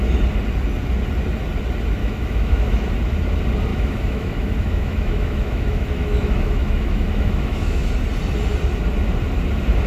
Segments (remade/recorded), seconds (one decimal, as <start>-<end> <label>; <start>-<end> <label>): 0.0-2.0 recorded; 2.0-2.9 remade; 2.9-3.7 recorded; 3.7-7.9 remade; 7.9-9.9 recorded